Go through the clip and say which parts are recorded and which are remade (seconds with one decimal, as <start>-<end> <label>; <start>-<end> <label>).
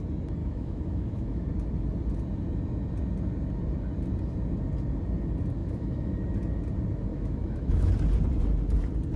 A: 0.0-0.4 recorded; 0.4-1.5 remade; 1.5-5.6 recorded; 5.6-6.1 remade; 6.1-7.1 recorded; 7.1-7.9 remade; 7.9-9.2 recorded